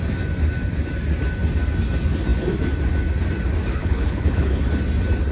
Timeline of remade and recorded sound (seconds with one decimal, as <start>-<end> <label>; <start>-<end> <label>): 0.0-3.8 recorded; 3.8-4.6 remade; 4.6-5.3 recorded